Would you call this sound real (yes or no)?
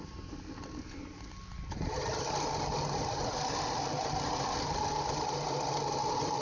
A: yes